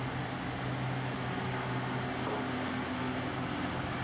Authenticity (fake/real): real